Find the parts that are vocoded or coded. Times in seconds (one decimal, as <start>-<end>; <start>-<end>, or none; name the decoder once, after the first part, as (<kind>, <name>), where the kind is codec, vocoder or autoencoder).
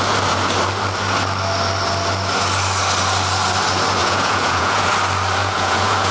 4.0-4.9 (vocoder, Vocos); 5.4-6.1